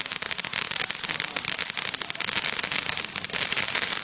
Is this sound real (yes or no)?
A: yes